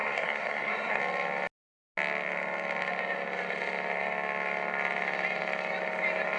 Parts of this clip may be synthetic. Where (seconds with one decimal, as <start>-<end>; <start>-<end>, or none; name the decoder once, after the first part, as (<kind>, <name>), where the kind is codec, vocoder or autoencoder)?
0.0-1.0 (codec, SNAC)